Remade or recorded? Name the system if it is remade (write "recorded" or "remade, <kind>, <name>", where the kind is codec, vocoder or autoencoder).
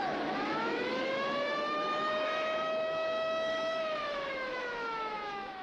remade, autoencoder, DAC-VAE